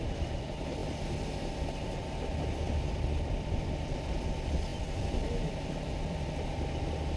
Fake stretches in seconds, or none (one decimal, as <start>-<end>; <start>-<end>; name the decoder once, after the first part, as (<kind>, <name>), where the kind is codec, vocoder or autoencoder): none